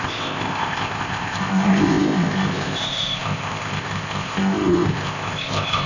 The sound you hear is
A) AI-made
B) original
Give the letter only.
A